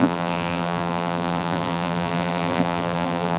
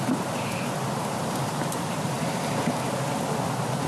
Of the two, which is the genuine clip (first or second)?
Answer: second